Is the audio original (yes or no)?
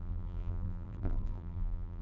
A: no